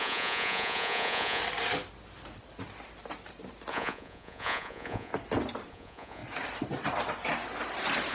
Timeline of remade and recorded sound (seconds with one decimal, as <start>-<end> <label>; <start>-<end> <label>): 0.0-1.4 remade; 1.4-3.7 recorded; 3.7-5.1 remade; 5.1-5.7 recorded; 5.7-6.2 remade; 6.2-8.1 recorded